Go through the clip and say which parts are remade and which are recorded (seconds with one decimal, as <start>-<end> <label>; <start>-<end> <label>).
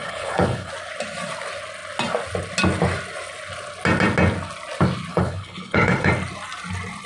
0.0-0.7 remade; 0.7-5.1 recorded; 5.1-6.1 remade; 6.1-7.1 recorded